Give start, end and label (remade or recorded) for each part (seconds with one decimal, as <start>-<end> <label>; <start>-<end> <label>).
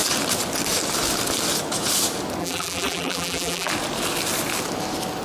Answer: 0.0-2.4 recorded; 2.4-3.7 remade; 3.7-5.2 recorded